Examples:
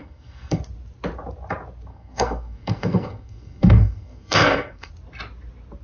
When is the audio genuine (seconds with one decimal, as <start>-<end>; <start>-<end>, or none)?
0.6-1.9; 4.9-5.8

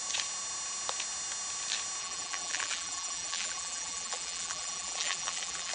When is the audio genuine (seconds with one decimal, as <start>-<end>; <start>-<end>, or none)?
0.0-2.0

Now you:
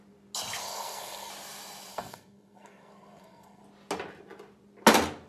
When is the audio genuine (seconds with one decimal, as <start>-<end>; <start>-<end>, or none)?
0.0-0.6; 1.3-1.9; 3.6-5.3

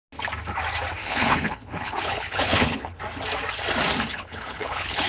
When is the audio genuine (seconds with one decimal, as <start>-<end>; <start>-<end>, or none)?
0.0-1.0; 3.0-4.1